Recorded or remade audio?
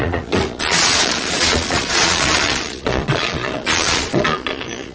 remade